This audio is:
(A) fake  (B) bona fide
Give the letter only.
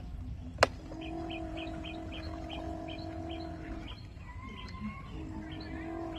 B